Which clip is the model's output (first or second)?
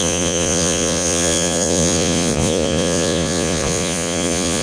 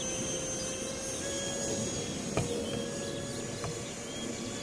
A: first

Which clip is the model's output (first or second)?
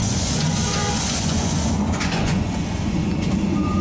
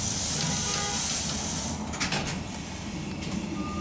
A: first